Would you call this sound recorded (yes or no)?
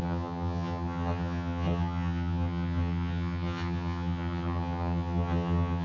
no